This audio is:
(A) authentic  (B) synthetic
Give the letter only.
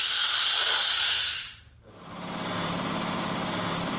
B